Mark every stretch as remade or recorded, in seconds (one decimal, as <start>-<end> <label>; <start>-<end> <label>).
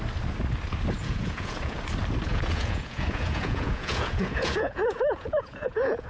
0.0-1.0 recorded; 1.0-1.8 remade; 1.8-2.3 recorded; 2.3-6.1 remade